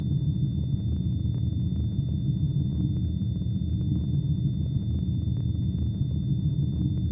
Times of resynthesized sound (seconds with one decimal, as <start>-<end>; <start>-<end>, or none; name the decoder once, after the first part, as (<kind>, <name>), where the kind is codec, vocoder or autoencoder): none